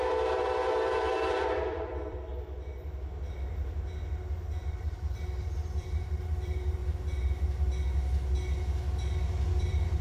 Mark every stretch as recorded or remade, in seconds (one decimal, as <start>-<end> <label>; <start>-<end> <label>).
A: 0.0-2.3 remade; 2.3-4.6 recorded; 4.6-6.8 remade; 6.8-9.5 recorded; 9.5-10.0 remade